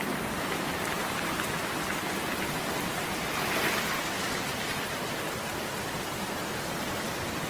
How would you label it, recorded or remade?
recorded